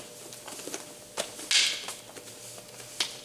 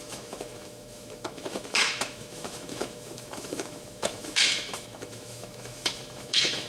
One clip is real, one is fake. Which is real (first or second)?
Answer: first